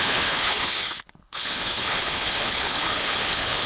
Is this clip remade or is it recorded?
remade